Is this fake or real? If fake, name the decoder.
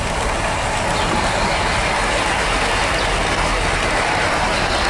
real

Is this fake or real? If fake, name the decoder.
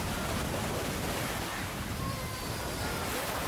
real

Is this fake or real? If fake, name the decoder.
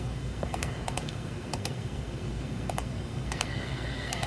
fake, codec, SNAC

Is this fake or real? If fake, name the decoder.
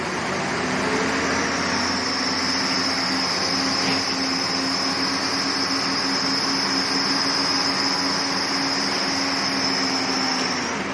real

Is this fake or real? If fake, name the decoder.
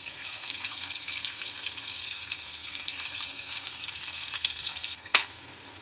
fake, codec, SNAC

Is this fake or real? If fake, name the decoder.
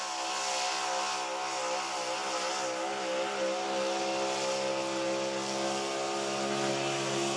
real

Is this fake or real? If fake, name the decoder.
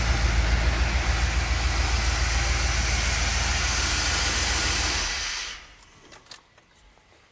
real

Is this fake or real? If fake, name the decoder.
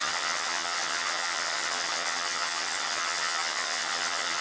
fake, vocoder, HiFi-GAN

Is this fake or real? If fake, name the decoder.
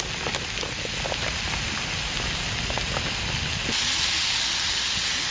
real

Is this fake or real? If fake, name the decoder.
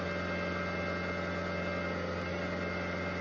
real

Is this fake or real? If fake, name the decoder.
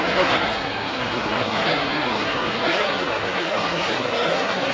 fake, codec, SNAC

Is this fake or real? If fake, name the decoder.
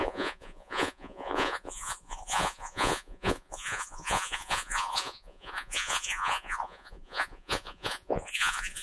fake, vocoder, Vocos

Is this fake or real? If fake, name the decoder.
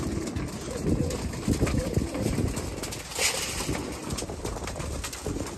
real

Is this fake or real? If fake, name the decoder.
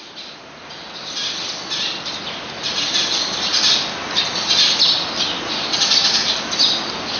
real